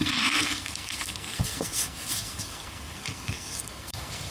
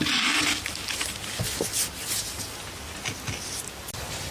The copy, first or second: first